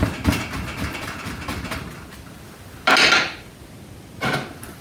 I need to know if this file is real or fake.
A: real